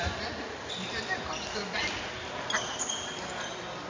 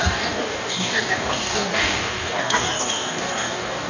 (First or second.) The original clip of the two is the first